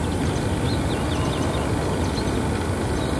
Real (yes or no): yes